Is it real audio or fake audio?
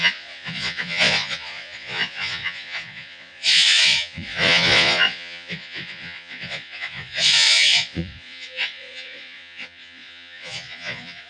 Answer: fake